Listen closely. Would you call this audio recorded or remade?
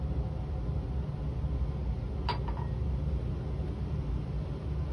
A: recorded